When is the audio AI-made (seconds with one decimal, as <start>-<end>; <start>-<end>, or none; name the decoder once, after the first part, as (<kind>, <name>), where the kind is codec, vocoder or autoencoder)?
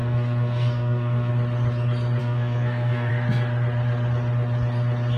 0.0-1.3 (codec, SNAC); 2.2-3.1